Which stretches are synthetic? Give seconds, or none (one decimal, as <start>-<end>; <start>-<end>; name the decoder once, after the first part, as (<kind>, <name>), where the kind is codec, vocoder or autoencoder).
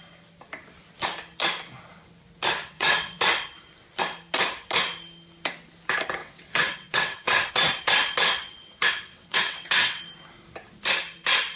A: 2.6-3.2 (vocoder, WaveNeXt); 6.2-7.5; 8.4-10.0